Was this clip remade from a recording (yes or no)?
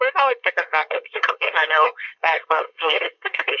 yes